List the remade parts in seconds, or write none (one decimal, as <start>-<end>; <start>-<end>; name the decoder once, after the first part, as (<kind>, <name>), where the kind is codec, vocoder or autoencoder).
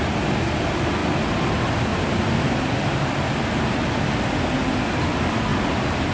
1.9-3.9 (vocoder, BigVGAN v2); 5.5-6.1